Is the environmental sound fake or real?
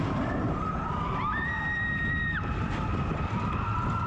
real